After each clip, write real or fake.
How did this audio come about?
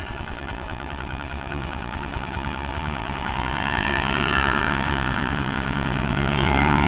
fake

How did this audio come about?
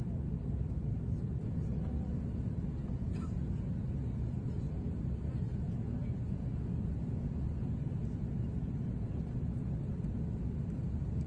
real